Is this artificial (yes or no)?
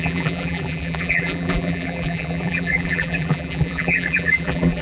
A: yes